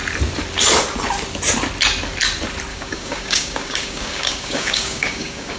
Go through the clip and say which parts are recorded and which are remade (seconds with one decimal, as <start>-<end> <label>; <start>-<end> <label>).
0.0-2.7 recorded; 2.7-5.6 remade